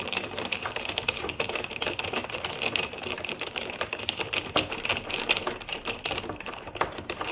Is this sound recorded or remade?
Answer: remade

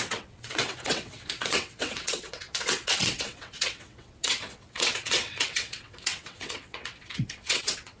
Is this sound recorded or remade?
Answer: remade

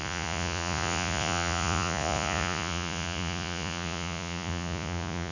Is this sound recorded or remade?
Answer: remade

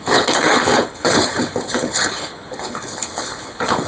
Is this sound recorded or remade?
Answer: remade